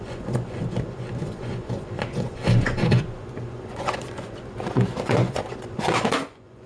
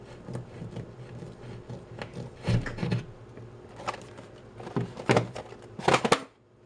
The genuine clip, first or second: second